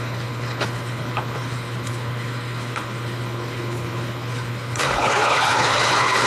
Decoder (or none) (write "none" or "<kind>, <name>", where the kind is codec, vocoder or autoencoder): codec, HILCodec